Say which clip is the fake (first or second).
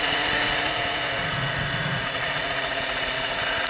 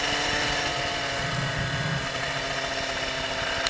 first